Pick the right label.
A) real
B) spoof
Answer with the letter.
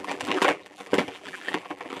B